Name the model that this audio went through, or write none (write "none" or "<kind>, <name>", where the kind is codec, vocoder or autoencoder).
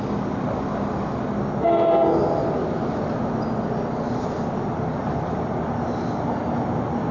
none